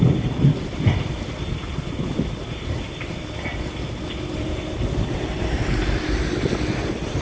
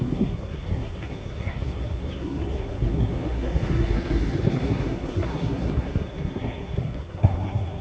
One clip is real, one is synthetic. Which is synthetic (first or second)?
second